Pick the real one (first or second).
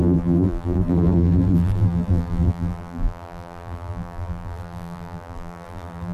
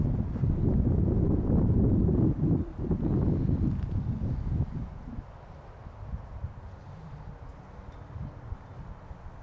second